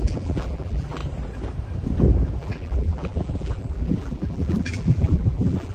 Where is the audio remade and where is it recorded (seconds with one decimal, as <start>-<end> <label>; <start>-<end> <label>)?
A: 0.0-1.0 remade; 1.0-2.4 recorded; 2.4-5.7 remade